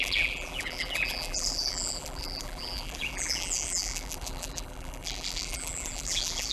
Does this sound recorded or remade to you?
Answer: remade